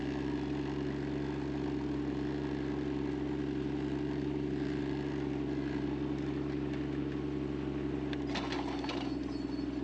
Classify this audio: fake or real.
real